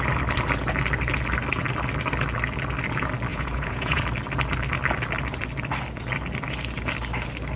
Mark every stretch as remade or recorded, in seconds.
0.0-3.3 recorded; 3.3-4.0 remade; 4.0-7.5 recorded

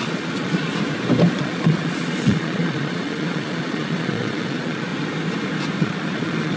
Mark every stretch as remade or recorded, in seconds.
0.0-0.7 remade; 0.7-1.3 recorded; 1.3-4.9 remade; 4.9-5.8 recorded; 5.8-6.6 remade

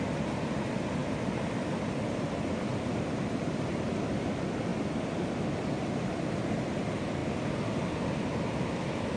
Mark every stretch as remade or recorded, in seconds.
0.0-9.2 recorded

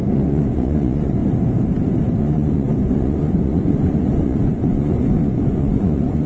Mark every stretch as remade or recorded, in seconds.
0.0-1.2 remade; 1.2-2.2 recorded; 2.2-6.3 remade

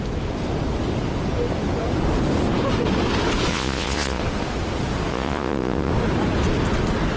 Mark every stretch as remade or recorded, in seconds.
0.0-3.5 recorded; 3.5-4.2 remade; 4.2-5.1 recorded; 5.1-5.9 remade; 5.9-7.2 recorded